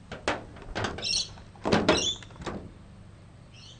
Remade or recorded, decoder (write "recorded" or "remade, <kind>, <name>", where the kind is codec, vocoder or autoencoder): recorded